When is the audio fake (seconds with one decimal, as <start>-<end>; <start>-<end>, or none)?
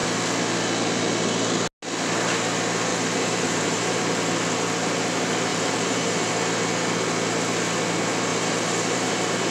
2.9-4.0; 5.5-6.3; 8.3-9.1